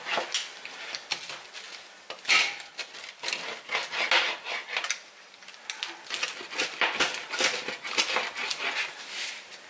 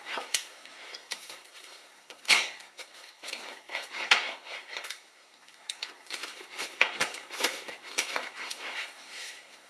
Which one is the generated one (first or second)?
second